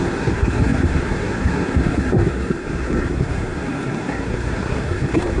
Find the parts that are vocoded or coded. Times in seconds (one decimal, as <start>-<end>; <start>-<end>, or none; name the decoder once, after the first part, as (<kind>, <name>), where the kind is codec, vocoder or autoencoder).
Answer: 0.0-5.4 (codec, SNAC)